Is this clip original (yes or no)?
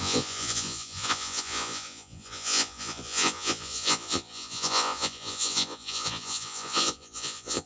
no